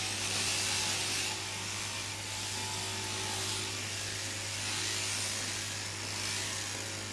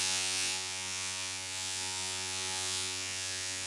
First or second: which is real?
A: first